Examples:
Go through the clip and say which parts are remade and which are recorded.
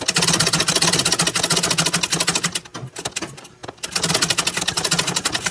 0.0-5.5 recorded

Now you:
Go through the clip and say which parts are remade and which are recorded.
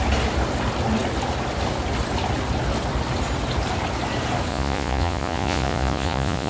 0.0-4.5 recorded; 4.5-6.5 remade